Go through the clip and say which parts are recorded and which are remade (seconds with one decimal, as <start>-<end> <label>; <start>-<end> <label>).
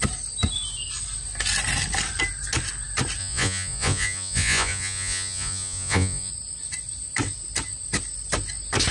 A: 0.0-3.2 recorded; 3.2-6.3 remade; 6.3-8.9 recorded